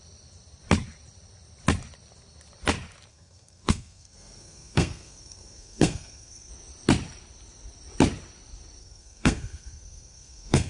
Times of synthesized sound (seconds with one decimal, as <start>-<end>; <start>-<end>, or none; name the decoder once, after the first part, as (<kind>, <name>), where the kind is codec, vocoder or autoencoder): 3.1-6.5 (codec, SNAC); 8.8-10.7